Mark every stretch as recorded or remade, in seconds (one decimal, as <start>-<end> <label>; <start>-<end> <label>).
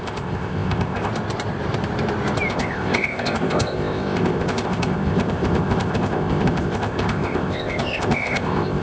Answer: 0.0-1.1 remade; 1.1-2.5 recorded; 2.5-8.8 remade